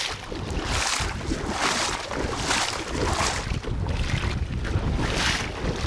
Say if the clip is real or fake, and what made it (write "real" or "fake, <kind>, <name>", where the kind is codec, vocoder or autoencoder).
real